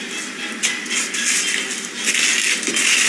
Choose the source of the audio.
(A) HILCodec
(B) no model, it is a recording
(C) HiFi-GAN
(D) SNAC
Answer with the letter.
B